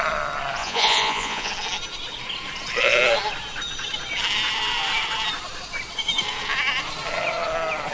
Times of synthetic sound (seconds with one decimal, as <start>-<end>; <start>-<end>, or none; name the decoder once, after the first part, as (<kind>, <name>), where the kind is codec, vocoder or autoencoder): 0.6-1.5 (vocoder, Vocos)